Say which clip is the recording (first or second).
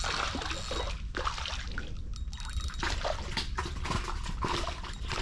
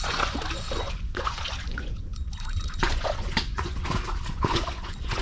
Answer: first